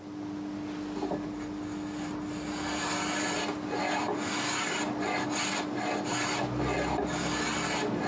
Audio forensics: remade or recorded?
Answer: recorded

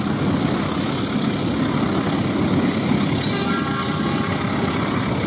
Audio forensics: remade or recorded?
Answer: recorded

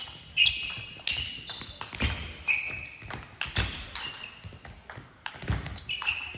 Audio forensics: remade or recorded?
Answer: recorded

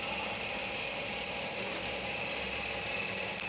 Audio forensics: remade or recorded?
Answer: recorded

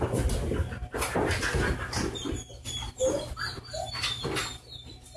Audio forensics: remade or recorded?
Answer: recorded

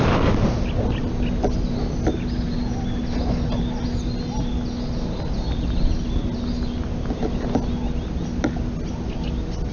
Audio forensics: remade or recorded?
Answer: recorded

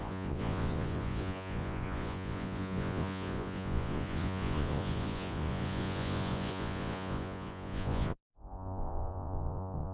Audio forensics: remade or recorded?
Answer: remade